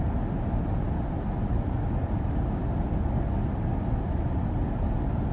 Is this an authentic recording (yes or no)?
yes